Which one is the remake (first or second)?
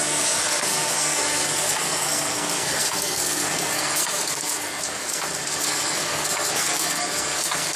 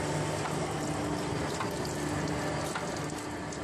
first